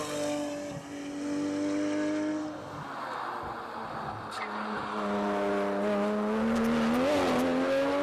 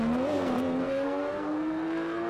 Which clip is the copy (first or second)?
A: second